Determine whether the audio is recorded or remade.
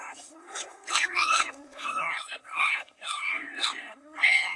remade